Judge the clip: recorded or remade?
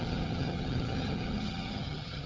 remade